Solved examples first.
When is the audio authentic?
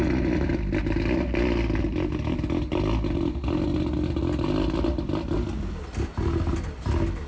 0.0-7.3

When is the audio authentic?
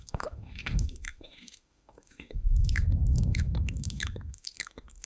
none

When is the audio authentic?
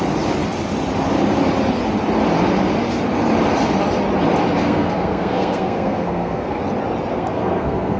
0.0-4.6; 6.6-7.1